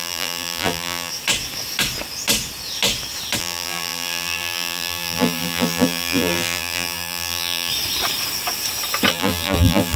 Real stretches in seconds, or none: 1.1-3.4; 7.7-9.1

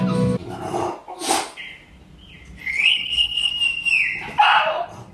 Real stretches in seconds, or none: 0.0-2.6; 3.5-5.1

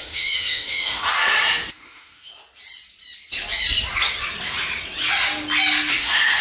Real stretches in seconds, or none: 1.0-1.7; 2.3-5.9